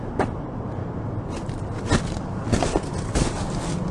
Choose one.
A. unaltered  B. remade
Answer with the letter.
A